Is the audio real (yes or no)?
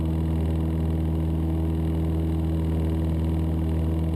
yes